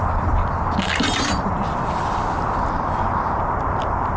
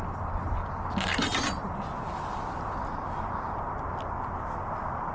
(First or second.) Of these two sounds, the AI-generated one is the first